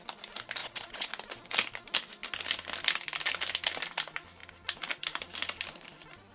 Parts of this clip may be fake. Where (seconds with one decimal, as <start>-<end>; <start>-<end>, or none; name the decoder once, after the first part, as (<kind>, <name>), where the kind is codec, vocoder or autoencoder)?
0.6-1.1 (vocoder, Vocos)